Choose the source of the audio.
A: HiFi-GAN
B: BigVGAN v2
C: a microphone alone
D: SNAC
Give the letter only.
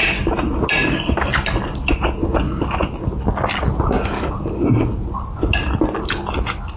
C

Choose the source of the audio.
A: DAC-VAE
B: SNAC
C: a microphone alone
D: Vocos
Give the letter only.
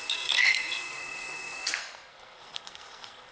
B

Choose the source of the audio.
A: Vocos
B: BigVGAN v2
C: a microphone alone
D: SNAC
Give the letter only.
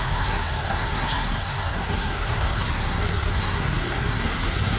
D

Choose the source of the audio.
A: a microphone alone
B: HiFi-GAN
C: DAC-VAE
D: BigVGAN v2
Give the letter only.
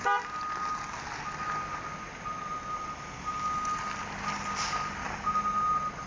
A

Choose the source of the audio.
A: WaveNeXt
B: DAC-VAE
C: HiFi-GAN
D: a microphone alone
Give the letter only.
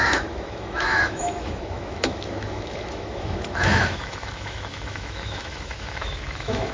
B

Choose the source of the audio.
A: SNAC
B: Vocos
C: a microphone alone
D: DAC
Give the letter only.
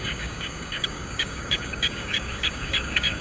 D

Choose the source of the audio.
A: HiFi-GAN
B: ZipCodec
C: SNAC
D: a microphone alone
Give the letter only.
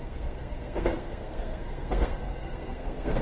C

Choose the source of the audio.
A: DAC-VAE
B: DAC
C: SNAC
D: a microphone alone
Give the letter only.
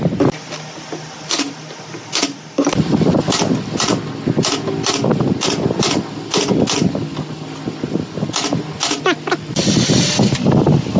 D